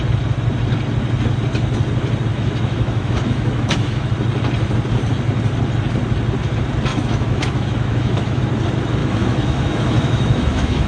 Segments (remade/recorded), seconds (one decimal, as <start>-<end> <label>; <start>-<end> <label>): 0.0-2.3 recorded; 2.3-4.1 remade; 4.1-6.9 recorded; 6.9-8.4 remade; 8.4-9.0 recorded; 9.0-10.9 remade